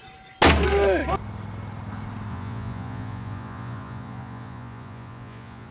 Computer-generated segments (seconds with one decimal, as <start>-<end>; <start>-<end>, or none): 2.3-5.7